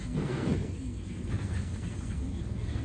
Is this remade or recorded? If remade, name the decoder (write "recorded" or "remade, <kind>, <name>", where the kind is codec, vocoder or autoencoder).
remade, codec, SNAC